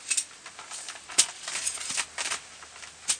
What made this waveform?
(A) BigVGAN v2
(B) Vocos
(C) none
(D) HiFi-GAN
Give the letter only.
C